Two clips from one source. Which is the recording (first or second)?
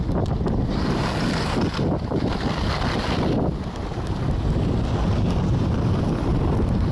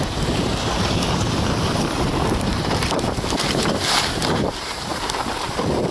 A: first